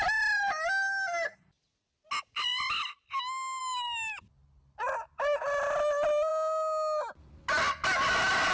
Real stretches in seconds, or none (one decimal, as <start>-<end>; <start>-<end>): 0.0-8.5